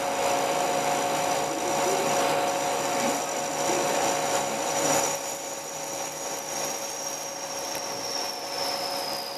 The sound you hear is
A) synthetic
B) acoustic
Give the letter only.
B